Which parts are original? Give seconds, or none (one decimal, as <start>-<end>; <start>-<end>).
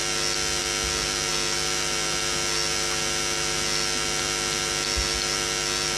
0.0-6.0